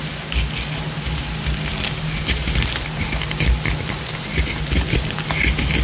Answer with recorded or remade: recorded